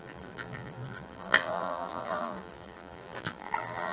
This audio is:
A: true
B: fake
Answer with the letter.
B